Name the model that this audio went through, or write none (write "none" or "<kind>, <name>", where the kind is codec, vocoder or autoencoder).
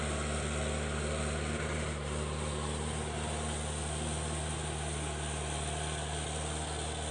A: none